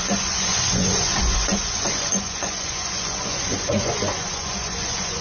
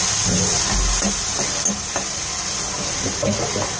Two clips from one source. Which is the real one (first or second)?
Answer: second